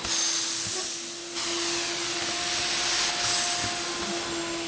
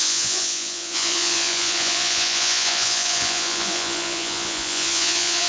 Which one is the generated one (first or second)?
second